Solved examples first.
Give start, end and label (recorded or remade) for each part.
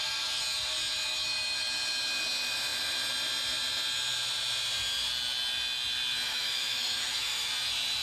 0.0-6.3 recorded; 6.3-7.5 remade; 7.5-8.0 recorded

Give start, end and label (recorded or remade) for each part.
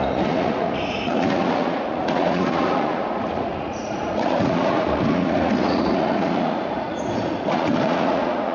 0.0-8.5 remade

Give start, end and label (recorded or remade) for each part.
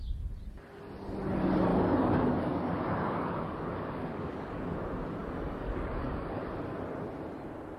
0.0-1.7 recorded; 1.7-4.8 remade; 4.8-5.2 recorded; 5.2-6.4 remade; 6.4-7.8 recorded